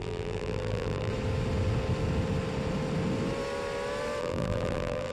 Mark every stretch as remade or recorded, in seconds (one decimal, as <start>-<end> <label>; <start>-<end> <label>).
0.0-1.1 remade; 1.1-4.2 recorded; 4.2-5.1 remade